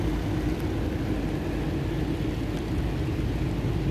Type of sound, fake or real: real